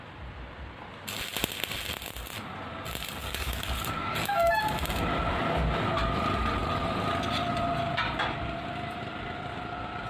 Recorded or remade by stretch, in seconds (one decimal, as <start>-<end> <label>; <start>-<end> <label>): 0.0-3.2 recorded; 3.2-4.6 remade; 4.6-10.1 recorded